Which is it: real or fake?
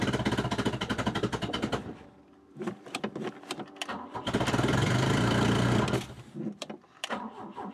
fake